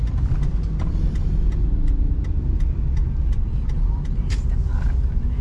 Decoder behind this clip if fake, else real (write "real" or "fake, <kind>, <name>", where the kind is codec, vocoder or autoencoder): real